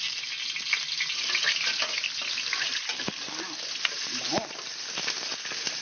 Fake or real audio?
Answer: real